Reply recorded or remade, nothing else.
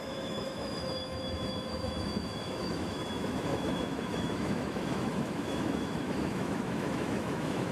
remade